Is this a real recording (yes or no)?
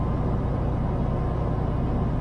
yes